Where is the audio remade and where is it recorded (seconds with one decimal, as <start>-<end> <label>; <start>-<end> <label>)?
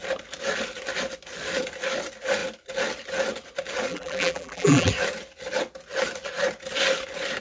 0.0-3.9 recorded; 3.9-4.9 remade; 4.9-7.4 recorded